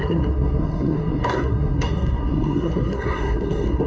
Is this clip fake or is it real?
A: fake